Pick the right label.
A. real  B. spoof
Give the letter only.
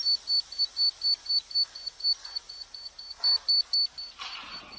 A